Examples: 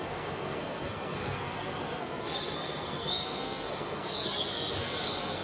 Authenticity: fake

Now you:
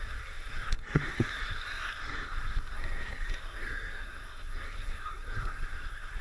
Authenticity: fake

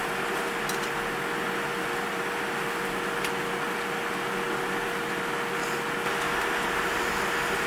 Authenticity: real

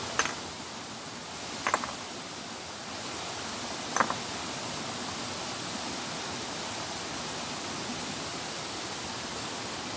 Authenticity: real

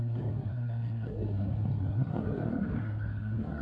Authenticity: fake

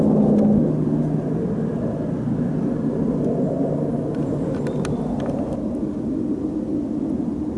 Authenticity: real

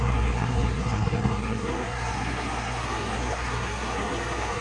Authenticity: fake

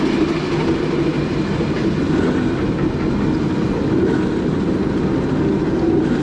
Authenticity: real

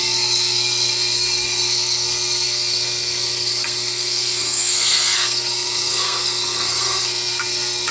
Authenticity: fake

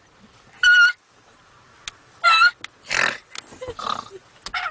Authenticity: real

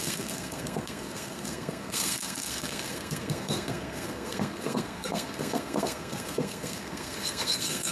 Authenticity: fake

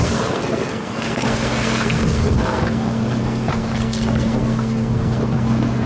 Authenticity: fake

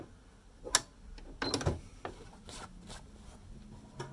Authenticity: real